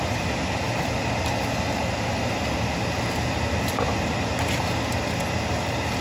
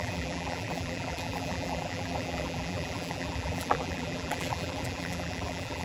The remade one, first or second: second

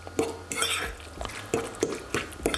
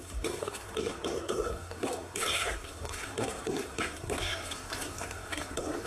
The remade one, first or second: second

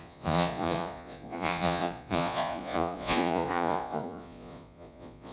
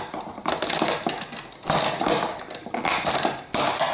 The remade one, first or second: first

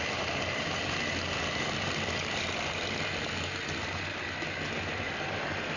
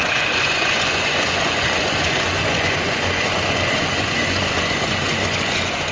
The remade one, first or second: second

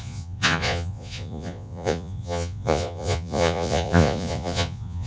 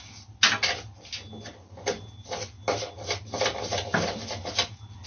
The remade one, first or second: first